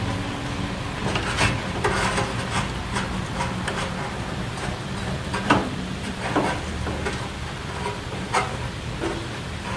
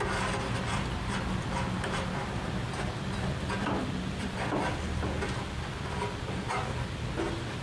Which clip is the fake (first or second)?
first